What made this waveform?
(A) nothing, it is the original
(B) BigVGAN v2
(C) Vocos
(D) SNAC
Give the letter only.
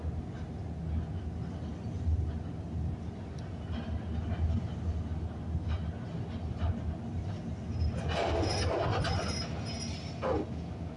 A